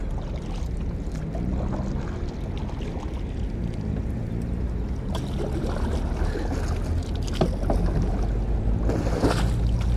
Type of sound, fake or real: real